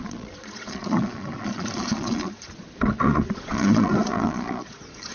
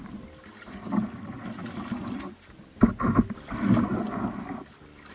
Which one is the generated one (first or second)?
first